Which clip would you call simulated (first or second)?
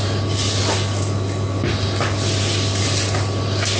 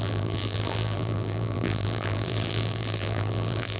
second